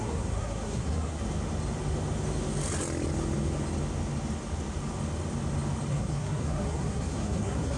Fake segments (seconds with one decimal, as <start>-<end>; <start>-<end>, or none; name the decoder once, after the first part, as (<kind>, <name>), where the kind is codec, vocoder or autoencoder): 0.0-1.2 (codec, SNAC); 5.9-7.8